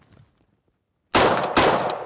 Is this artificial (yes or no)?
no